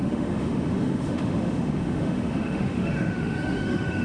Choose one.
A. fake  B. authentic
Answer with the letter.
A